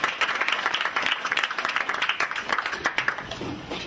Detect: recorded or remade remade